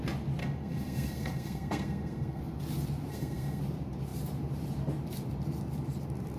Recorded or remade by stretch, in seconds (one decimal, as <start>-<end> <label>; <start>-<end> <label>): 0.0-0.4 recorded; 0.4-2.4 remade; 2.4-3.1 recorded; 3.1-3.6 remade; 3.6-6.4 recorded